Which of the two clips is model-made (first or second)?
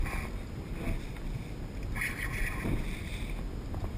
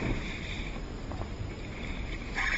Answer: second